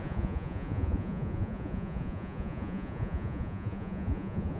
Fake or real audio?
fake